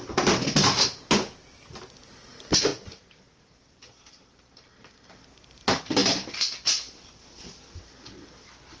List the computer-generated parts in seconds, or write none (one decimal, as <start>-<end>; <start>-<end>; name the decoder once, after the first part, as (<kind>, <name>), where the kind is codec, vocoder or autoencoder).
none

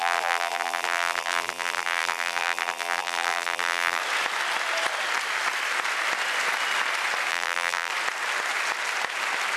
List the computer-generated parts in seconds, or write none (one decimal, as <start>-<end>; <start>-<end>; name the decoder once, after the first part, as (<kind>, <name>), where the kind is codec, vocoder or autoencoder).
0.0-4.0 (vocoder, BigVGAN v2); 7.3-7.9